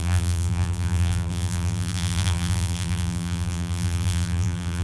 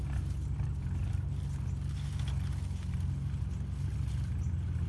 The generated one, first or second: first